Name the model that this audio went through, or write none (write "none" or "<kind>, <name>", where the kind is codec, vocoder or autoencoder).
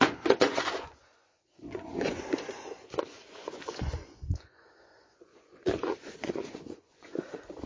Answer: vocoder, Vocos